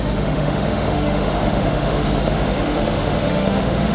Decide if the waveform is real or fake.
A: fake